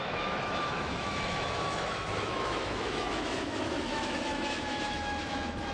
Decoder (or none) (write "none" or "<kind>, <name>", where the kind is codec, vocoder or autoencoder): autoencoder, DAC-VAE